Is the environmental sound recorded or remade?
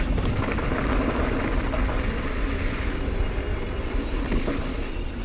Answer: recorded